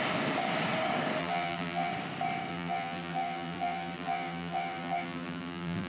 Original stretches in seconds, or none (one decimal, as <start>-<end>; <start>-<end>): 0.0-1.2; 1.9-2.5